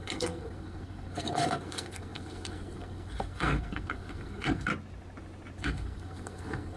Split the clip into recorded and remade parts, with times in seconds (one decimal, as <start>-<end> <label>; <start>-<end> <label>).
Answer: 0.0-4.7 remade; 4.7-5.6 recorded; 5.6-6.8 remade